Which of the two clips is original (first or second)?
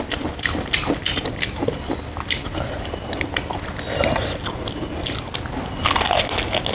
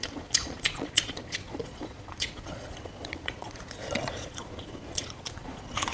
first